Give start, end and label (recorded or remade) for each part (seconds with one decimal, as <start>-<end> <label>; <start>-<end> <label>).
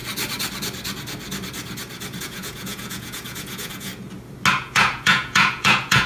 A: 0.0-2.2 recorded; 2.2-3.9 remade; 3.9-4.5 recorded; 4.5-6.1 remade